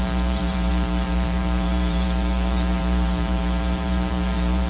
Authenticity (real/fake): fake